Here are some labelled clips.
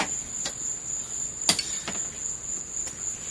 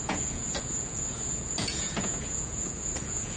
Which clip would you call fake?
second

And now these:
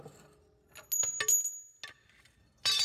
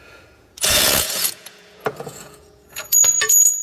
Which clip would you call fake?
second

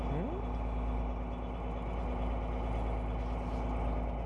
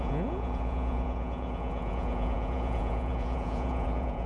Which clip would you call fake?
second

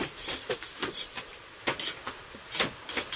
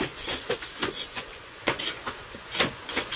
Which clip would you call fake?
second